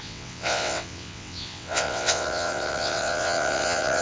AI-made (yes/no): yes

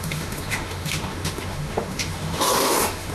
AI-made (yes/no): yes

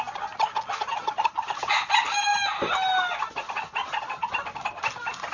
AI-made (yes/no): no